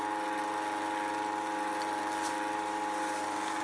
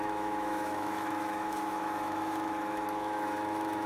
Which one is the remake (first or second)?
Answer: second